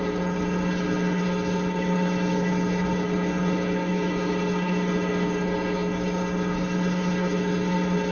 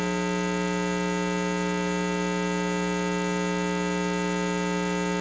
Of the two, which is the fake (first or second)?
first